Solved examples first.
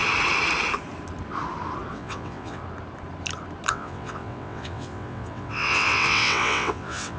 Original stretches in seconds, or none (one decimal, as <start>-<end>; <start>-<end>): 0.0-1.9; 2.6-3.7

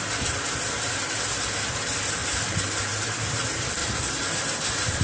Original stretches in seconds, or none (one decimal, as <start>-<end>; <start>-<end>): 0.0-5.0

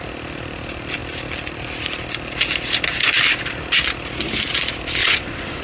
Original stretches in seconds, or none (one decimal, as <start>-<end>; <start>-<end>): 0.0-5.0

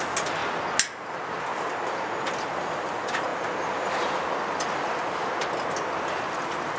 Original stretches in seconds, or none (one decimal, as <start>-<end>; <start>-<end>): 0.0-6.8

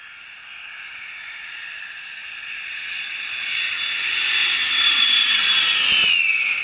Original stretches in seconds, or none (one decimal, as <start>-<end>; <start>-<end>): 0.0-4.4; 5.4-6.6

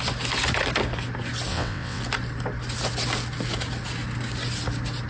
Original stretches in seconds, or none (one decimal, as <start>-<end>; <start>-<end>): 0.0-1.5; 2.0-5.1